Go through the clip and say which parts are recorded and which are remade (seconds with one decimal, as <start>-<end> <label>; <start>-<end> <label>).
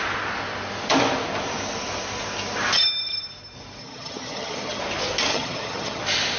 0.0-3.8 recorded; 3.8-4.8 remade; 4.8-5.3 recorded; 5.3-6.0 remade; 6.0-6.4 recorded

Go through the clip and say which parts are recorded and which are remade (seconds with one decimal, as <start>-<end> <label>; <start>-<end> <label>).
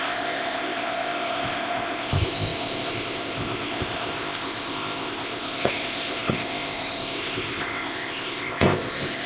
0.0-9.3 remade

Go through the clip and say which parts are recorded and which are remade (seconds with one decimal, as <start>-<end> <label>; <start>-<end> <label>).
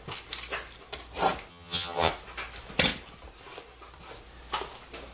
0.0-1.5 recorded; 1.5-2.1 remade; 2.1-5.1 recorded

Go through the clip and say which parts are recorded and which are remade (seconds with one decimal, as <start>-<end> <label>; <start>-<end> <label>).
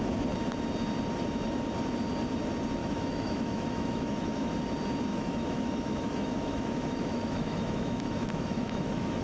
0.0-2.8 recorded; 2.8-4.5 remade; 4.5-5.1 recorded; 5.1-9.2 remade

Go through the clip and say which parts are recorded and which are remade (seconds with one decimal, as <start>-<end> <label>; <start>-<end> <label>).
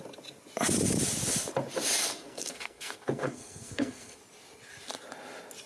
0.0-2.0 recorded; 2.0-4.2 remade; 4.2-5.7 recorded